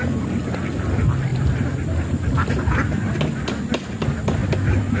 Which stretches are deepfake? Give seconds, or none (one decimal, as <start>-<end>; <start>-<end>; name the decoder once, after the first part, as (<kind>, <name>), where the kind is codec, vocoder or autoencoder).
none